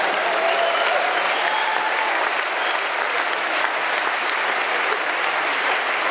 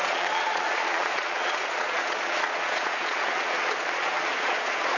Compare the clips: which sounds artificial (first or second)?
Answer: second